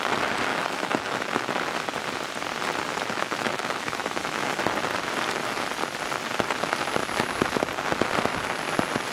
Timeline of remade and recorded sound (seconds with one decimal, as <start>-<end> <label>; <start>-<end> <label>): 0.0-0.5 recorded; 0.5-1.5 remade; 1.5-2.9 recorded; 2.9-4.6 remade; 4.6-9.1 recorded